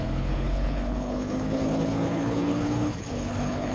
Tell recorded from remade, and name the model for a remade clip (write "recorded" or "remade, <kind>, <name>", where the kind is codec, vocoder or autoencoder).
remade, codec, HILCodec